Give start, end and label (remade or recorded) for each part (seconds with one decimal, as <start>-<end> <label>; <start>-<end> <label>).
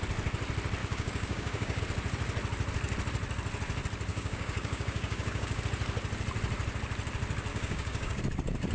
0.0-0.8 recorded; 0.8-1.8 remade; 1.8-4.1 recorded; 4.1-5.6 remade; 5.6-7.5 recorded; 7.5-8.2 remade; 8.2-8.7 recorded